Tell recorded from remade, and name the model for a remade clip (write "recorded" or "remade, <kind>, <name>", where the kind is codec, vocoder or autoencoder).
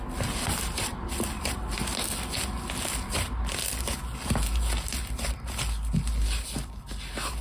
recorded